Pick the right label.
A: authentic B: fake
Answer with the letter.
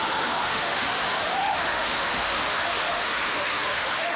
B